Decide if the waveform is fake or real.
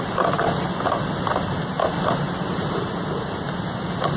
real